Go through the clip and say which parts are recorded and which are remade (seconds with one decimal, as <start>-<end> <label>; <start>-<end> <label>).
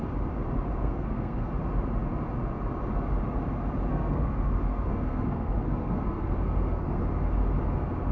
0.0-0.8 recorded; 0.8-1.5 remade; 1.5-3.9 recorded; 3.9-7.0 remade; 7.0-8.1 recorded